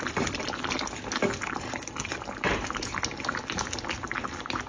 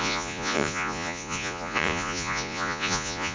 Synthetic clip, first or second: second